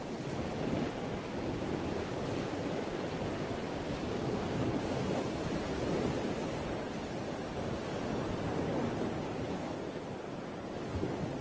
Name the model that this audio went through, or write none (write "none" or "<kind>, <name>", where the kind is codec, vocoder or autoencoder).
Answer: none